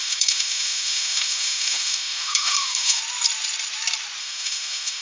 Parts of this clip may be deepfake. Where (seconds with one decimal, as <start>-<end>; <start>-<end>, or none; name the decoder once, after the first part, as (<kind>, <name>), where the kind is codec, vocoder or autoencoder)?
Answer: 0.0-3.0 (autoencoder, DAC-VAE); 4.2-5.0